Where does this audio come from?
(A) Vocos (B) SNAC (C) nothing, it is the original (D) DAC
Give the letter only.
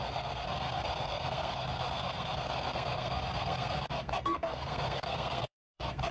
B